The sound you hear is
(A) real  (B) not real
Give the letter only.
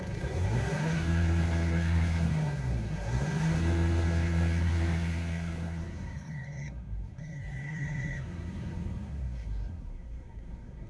B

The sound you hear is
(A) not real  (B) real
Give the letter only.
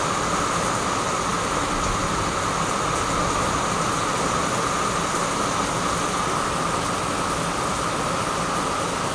B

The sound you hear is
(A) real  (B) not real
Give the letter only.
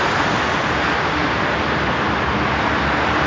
A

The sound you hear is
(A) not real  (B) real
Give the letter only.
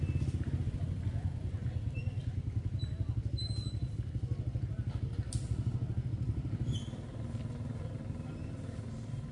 B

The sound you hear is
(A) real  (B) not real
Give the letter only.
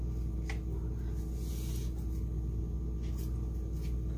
A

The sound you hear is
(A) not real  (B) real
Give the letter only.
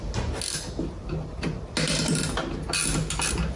B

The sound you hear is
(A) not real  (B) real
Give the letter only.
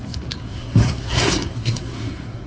A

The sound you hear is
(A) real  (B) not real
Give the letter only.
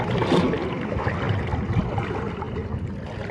A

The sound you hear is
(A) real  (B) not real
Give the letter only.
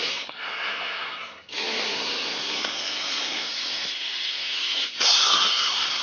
B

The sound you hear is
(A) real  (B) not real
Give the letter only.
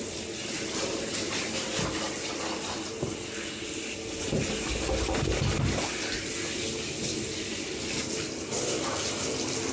A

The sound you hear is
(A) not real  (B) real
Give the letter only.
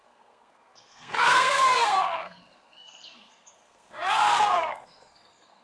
A